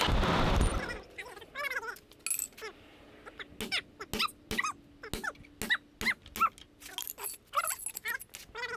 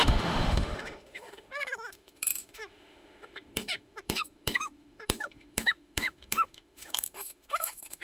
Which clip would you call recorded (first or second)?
first